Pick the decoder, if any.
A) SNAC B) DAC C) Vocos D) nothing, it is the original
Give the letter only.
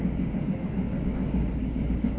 B